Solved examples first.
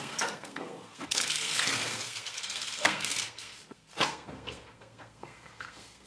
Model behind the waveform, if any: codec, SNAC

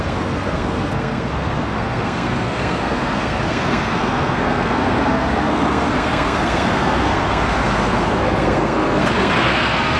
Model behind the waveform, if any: codec, SNAC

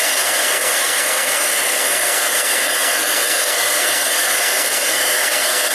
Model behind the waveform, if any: codec, SNAC